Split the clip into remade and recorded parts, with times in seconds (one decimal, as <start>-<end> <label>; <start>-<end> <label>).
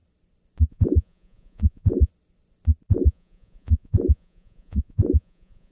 0.0-0.7 recorded; 0.7-2.1 remade; 2.1-2.9 recorded; 2.9-5.7 remade